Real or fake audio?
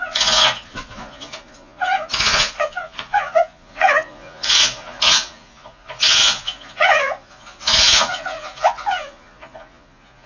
fake